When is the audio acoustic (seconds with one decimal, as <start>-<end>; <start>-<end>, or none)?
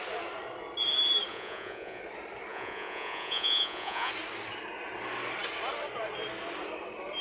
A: 0.0-1.3; 2.0-2.5; 4.1-7.2